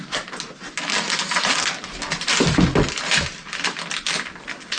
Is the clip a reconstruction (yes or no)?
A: no